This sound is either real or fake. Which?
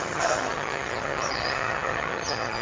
fake